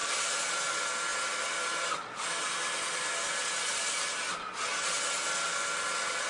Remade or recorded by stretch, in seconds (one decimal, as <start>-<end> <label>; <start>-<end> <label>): 0.0-6.3 recorded